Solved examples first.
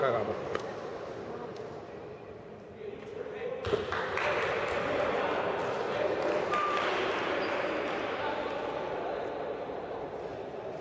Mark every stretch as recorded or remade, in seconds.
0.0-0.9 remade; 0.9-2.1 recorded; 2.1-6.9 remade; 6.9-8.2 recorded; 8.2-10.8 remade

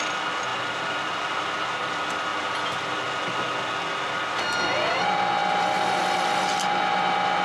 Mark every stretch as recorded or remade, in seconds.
0.0-0.5 recorded; 0.5-1.3 remade; 1.3-2.3 recorded; 2.3-3.4 remade; 3.4-5.4 recorded; 5.4-6.0 remade; 6.0-7.4 recorded

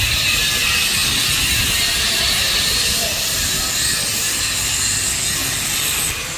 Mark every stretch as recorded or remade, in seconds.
0.0-1.0 recorded; 1.0-4.8 remade; 4.8-6.4 recorded

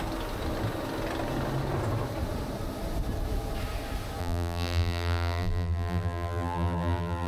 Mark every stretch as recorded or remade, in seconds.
0.0-4.2 recorded; 4.2-7.3 remade